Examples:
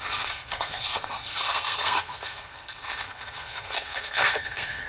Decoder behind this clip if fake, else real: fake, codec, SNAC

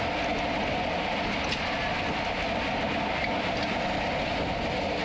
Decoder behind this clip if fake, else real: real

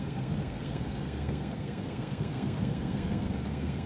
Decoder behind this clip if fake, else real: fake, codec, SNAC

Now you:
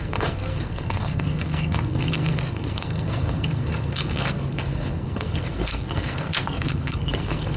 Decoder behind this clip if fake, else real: fake, codec, SNAC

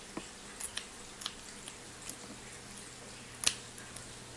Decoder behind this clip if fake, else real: real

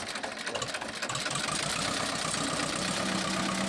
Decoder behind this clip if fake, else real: real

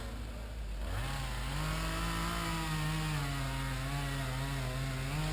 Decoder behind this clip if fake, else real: real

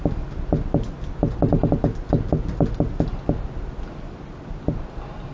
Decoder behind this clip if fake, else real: real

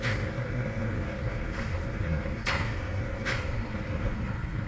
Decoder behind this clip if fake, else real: fake, codec, SNAC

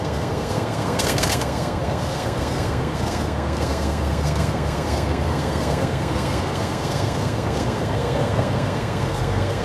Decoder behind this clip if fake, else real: fake, codec, SNAC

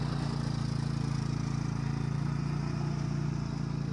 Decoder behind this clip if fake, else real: real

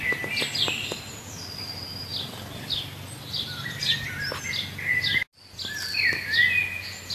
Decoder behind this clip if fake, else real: real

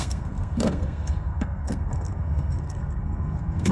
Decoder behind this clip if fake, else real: fake, codec, SNAC